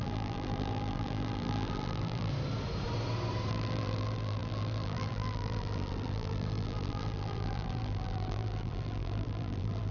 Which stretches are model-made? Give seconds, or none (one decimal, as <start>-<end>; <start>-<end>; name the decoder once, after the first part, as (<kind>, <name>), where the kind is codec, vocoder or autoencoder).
0.0-2.3 (vocoder, BigVGAN v2); 3.5-9.9